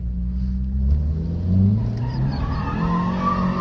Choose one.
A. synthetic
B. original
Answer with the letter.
B